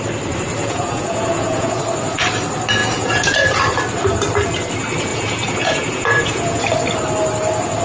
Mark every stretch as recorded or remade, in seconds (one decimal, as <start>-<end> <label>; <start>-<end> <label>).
0.0-0.6 recorded; 0.6-1.8 remade; 1.8-2.8 recorded; 2.8-3.6 remade; 3.6-5.1 recorded; 5.1-6.6 remade; 6.6-7.8 recorded